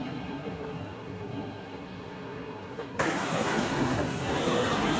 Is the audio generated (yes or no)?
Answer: yes